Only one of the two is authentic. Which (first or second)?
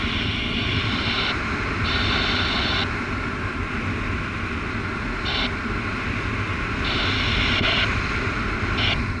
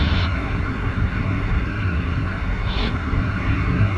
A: first